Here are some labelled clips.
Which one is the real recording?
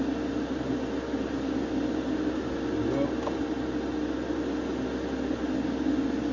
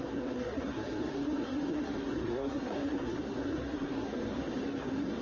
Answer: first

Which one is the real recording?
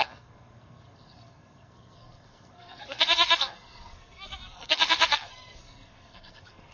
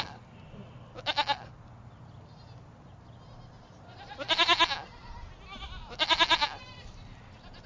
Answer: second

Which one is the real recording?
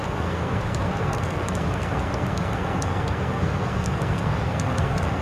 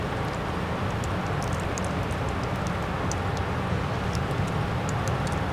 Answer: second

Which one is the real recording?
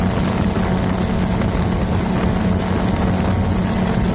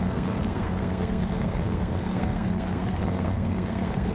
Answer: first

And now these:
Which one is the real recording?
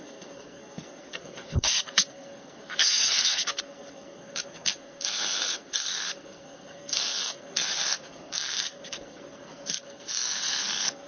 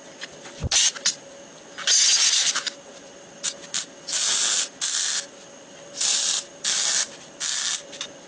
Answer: second